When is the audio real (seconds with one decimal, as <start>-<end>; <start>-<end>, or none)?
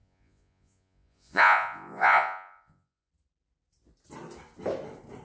3.1-5.2